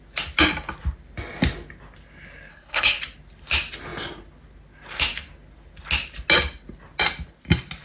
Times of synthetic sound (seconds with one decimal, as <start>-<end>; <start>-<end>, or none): 2.5-3.0